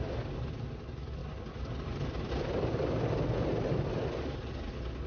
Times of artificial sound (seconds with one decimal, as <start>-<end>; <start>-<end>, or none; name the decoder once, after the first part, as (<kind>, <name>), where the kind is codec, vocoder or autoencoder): 1.2-2.3 (vocoder, BigVGAN v2)